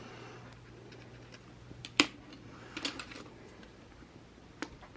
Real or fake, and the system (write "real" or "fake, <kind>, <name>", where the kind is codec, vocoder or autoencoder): real